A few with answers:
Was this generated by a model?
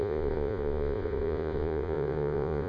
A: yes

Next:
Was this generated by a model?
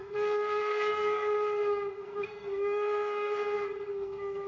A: yes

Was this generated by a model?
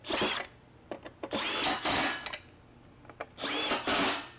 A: no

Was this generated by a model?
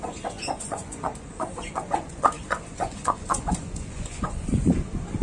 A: yes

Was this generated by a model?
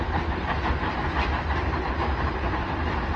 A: no